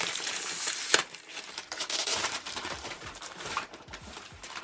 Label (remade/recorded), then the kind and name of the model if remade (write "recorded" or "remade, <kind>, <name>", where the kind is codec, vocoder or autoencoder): remade, vocoder, BigVGAN v2